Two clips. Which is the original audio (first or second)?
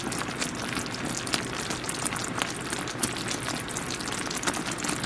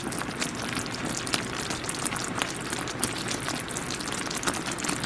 first